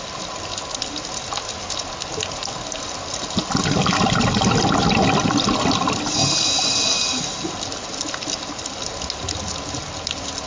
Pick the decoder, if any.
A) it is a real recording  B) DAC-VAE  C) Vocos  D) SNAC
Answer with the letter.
A